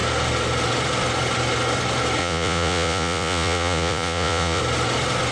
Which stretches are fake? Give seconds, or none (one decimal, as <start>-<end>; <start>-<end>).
2.2-4.6